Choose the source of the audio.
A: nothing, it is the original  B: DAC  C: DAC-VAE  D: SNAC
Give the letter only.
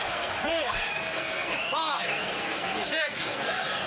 D